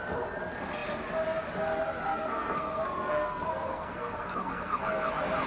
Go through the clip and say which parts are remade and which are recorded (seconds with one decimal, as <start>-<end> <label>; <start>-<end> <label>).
0.0-2.1 recorded; 2.1-5.1 remade; 5.1-5.5 recorded